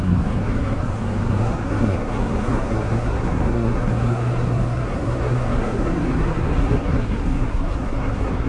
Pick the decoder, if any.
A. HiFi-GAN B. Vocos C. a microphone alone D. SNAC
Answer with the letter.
D